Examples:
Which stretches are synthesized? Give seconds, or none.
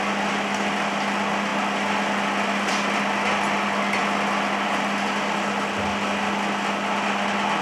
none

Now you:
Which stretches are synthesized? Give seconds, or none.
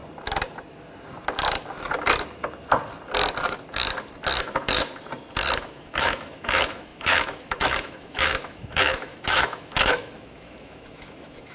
4.4-4.9 (autoencoder, DAC-VAE); 5.6-11.5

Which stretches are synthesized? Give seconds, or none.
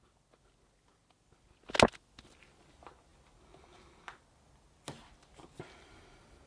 none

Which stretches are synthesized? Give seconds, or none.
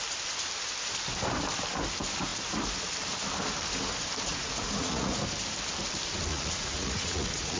4.3-5.2 (vocoder, Vocos); 6.3-7.6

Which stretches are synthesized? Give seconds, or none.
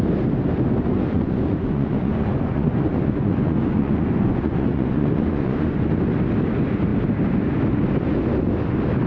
1.0-5.9 (vocoder, Vocos)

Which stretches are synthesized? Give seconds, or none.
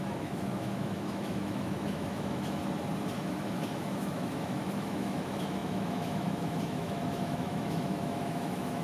0.0-2.6 (autoencoder, DAC-VAE); 3.2-8.8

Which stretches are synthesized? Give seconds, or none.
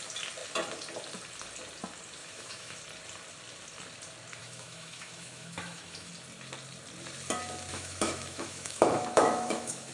2.2-2.8 (autoencoder, DAC-VAE); 4.4-6.1; 7.7-9.9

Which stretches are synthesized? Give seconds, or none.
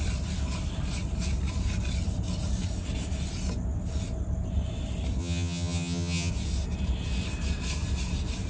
5.2-6.3 (vocoder, HiFi-GAN)